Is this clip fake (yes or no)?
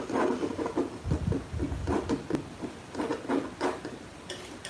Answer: no